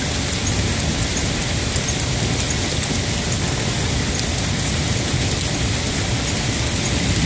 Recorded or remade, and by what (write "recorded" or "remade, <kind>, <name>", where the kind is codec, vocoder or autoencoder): recorded